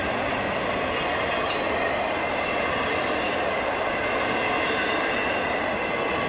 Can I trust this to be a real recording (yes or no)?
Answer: yes